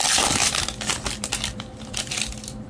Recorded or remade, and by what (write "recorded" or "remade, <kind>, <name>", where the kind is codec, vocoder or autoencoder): remade, vocoder, BigVGAN v2